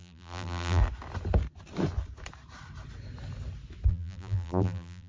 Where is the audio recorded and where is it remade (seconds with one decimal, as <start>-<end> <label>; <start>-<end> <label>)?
0.0-0.8 remade; 0.8-3.9 recorded; 3.9-5.1 remade